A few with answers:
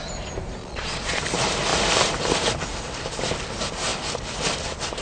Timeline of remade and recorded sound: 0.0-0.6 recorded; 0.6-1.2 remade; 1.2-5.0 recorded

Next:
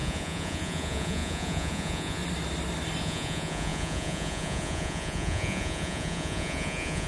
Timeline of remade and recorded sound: 0.0-2.2 remade; 2.2-3.0 recorded; 3.0-7.1 remade

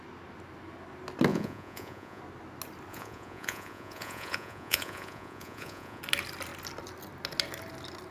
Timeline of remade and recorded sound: 0.0-1.3 recorded; 1.3-2.2 remade; 2.2-2.9 recorded; 2.9-6.0 remade; 6.0-8.1 recorded

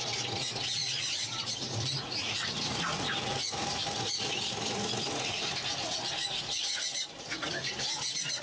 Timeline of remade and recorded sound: 0.0-8.4 remade

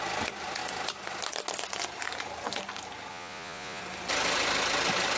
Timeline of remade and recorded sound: 0.0-3.1 recorded; 3.1-3.8 remade; 3.8-5.2 recorded

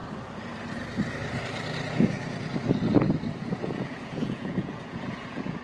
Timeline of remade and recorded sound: 0.0-1.9 recorded; 1.9-2.5 remade; 2.5-3.4 recorded; 3.4-5.6 remade

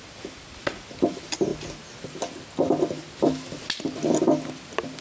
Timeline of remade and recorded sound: 0.0-5.0 recorded